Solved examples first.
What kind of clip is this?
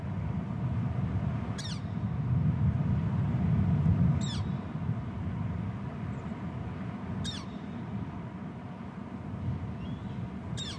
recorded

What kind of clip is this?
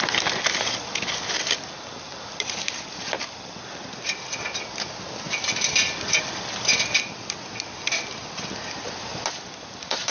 recorded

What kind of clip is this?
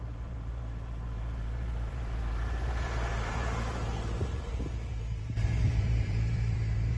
remade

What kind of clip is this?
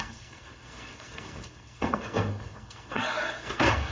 remade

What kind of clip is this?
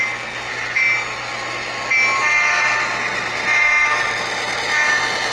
recorded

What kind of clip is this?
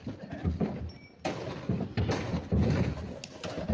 recorded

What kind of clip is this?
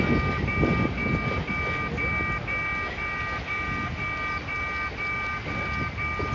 recorded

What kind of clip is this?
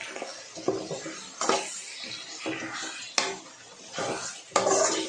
recorded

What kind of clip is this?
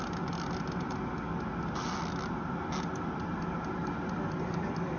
recorded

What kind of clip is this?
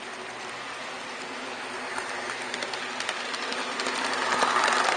recorded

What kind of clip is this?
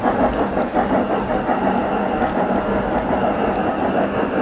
recorded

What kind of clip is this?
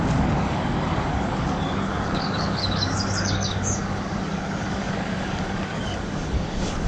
remade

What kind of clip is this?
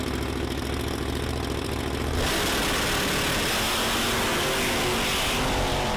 recorded